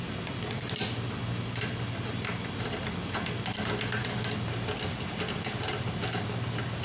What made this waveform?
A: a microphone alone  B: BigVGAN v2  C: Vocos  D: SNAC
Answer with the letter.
A